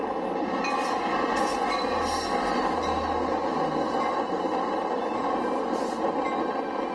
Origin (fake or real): real